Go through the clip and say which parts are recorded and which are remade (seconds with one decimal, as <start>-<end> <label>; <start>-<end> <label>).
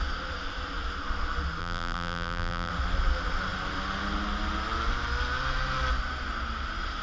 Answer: 0.0-1.6 recorded; 1.6-2.7 remade; 2.7-7.0 recorded